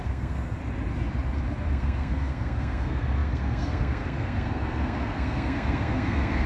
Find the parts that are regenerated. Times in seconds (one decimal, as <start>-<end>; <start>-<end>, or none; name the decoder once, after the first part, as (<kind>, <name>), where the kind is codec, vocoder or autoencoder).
0.0-0.6 (codec, SNAC); 1.7-6.5